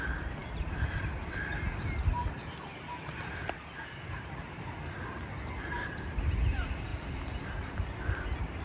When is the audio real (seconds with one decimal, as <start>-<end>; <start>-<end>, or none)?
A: 0.0-8.6